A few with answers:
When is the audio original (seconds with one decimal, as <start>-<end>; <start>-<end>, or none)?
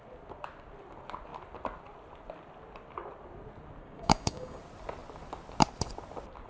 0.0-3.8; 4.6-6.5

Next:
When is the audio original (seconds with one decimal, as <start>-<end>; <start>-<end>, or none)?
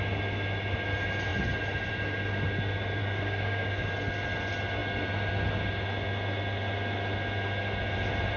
0.0-3.0; 3.9-8.4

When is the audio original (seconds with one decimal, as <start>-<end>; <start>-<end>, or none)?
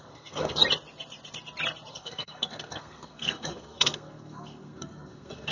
0.6-1.9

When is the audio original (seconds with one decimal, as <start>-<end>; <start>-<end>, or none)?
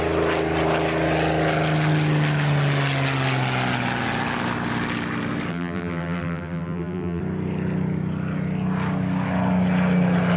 0.0-5.5; 7.2-10.4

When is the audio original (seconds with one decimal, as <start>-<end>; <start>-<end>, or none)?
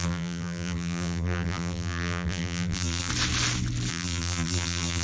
3.1-3.9